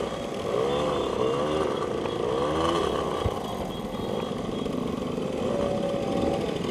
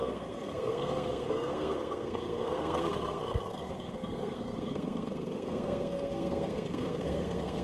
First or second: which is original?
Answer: first